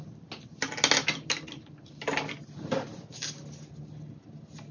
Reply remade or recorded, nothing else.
recorded